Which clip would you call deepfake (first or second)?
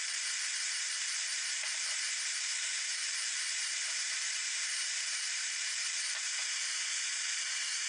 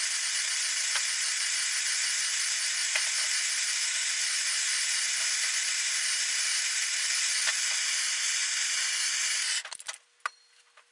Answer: first